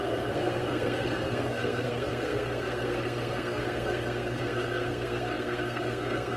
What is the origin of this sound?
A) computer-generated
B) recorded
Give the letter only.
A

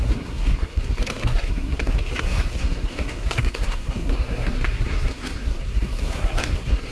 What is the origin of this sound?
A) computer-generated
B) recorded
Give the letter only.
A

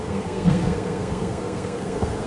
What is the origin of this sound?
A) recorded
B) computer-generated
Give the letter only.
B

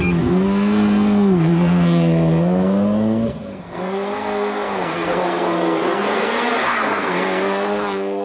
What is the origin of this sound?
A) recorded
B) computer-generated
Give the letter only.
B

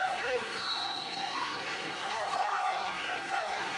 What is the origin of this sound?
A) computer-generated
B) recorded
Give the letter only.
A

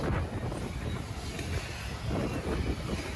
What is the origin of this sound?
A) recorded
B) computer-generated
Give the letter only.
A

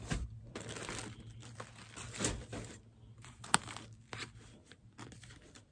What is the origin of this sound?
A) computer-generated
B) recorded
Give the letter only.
B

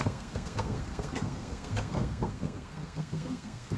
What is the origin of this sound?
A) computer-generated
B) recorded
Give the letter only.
A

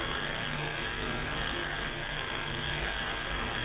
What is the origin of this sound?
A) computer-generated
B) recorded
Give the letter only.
A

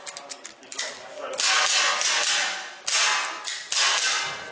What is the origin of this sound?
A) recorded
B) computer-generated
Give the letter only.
A